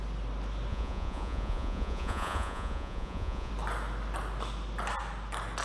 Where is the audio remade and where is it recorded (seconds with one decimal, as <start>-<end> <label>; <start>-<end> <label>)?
0.0-0.7 recorded; 0.7-3.5 remade; 3.5-5.6 recorded